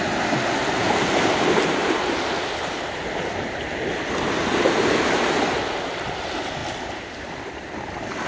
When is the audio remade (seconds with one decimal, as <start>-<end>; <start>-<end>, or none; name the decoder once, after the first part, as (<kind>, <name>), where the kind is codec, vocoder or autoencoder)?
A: none